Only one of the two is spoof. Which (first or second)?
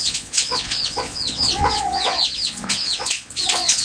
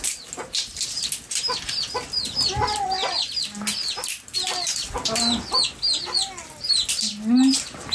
first